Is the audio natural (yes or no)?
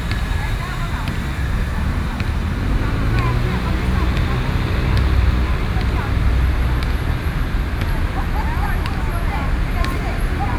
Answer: yes